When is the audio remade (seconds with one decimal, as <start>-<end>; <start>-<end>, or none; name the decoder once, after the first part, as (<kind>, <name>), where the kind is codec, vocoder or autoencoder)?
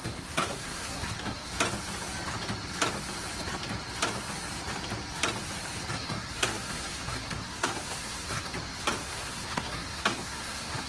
0.0-1.5 (codec, SNAC); 5.9-8.5; 9.0-10.9